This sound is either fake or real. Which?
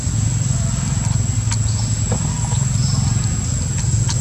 real